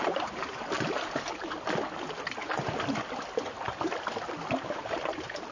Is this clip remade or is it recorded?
recorded